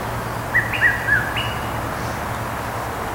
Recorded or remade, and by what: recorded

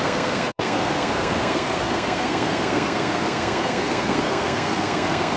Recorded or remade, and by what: remade, codec, SNAC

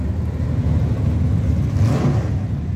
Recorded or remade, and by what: recorded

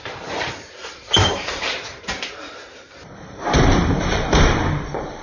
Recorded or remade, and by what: remade, vocoder, BigVGAN v2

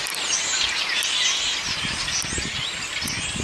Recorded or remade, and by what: recorded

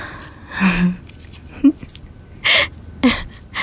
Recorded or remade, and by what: recorded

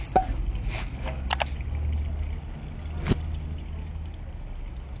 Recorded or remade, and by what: recorded